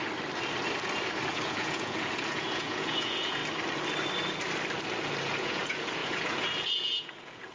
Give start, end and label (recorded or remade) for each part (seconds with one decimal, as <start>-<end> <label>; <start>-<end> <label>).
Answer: 0.0-1.3 recorded; 1.3-3.4 remade; 3.4-5.2 recorded; 5.2-7.5 remade